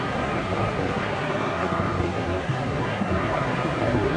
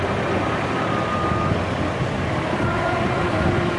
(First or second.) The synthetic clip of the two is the first